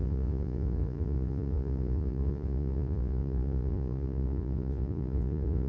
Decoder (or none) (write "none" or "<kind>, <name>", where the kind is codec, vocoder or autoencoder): vocoder, Vocos